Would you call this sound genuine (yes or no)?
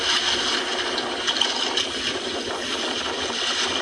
yes